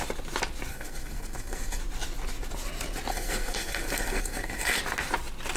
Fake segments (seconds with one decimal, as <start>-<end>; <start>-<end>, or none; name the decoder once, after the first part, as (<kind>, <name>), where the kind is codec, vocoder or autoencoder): 0.7-1.8 (codec, SNAC); 3.1-4.8